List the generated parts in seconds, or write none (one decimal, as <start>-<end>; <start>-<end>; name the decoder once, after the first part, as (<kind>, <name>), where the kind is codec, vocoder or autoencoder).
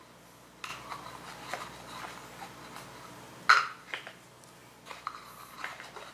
none